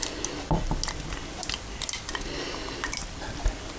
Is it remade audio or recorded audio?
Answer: recorded